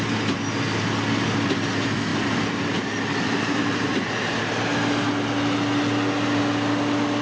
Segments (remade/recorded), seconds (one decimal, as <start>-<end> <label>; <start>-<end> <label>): 0.0-2.1 recorded; 2.1-4.6 remade; 4.6-7.2 recorded